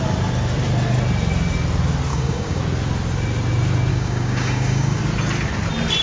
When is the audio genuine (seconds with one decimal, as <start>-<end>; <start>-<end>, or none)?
0.0-2.1; 2.6-3.9; 5.0-6.0